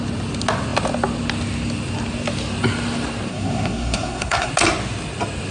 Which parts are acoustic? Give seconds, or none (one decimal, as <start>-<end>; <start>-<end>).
0.0-3.3; 4.5-5.5